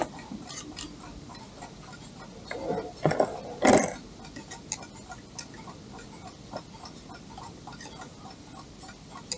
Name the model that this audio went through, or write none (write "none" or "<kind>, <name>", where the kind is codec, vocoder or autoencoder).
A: none